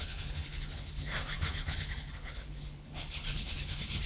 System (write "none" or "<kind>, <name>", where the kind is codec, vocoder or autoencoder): codec, HILCodec